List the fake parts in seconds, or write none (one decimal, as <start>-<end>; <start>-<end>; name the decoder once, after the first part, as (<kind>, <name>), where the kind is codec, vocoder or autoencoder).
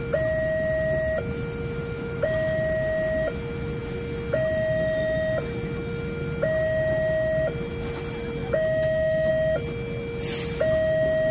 8.4-9.3 (autoencoder, DAC-VAE)